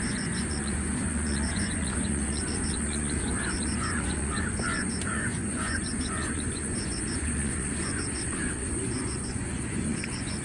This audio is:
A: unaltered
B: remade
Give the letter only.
B